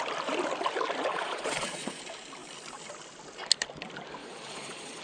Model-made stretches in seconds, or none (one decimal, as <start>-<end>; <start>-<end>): 1.1-2.0; 4.2-5.0